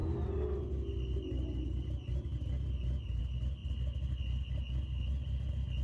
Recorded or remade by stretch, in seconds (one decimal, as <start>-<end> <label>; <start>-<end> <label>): 0.0-5.8 recorded